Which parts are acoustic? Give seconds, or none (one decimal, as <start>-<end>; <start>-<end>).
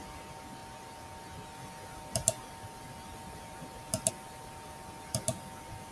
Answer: 0.0-5.9